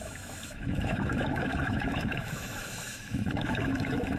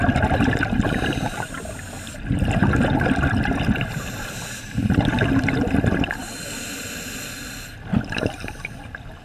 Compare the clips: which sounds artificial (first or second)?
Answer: first